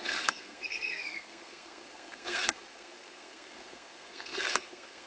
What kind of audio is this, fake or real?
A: fake